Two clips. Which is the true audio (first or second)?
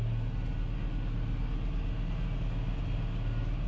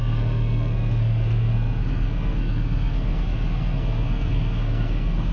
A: first